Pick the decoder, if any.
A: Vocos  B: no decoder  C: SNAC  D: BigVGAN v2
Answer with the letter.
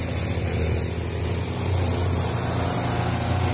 B